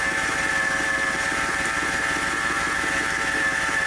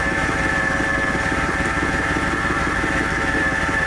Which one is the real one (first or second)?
first